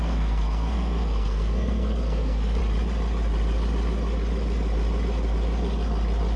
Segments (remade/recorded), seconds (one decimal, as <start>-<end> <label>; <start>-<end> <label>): 0.0-2.6 remade; 2.6-6.4 recorded